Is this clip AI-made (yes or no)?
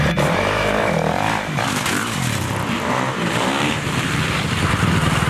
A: yes